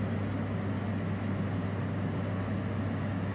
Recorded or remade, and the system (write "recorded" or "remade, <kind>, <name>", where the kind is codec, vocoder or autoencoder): recorded